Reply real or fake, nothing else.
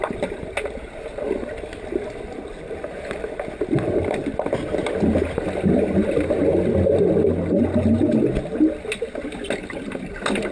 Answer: real